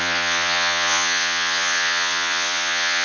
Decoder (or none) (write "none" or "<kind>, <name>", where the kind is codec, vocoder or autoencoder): vocoder, Vocos